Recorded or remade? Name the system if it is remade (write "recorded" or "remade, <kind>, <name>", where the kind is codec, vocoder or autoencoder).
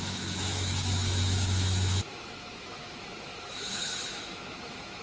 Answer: remade, autoencoder, DAC-VAE